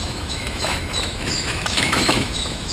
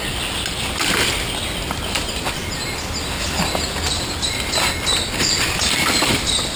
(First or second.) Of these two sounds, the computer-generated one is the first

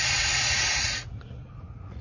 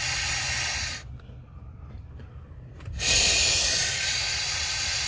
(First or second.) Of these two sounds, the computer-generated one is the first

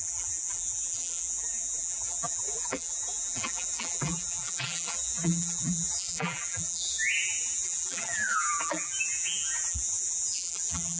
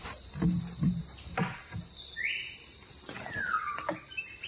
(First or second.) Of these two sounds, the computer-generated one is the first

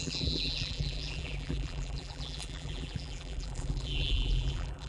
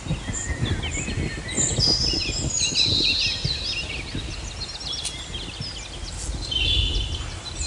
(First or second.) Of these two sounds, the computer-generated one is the first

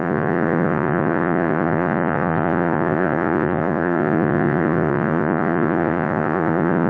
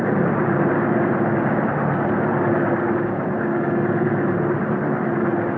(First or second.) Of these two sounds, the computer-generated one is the first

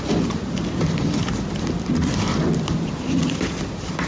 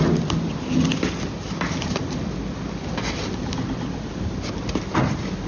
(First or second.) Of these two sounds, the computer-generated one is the first